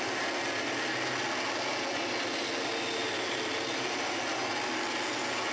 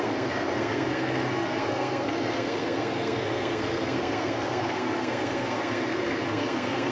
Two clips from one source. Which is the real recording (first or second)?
first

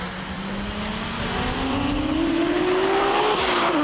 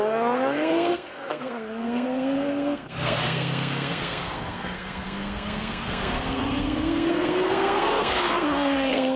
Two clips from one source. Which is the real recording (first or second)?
first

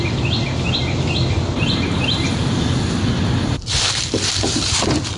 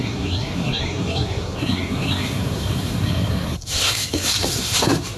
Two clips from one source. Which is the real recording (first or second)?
first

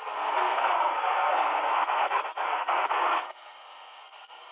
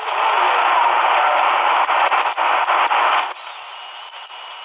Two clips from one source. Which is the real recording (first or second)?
second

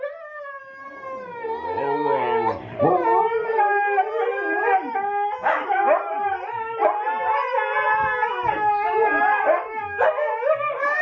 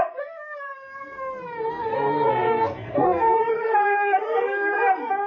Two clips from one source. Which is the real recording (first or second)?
first